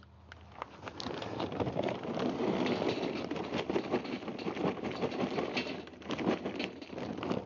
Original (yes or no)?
yes